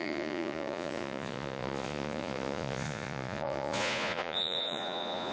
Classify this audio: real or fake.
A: fake